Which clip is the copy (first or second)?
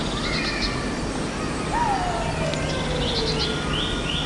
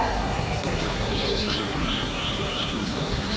second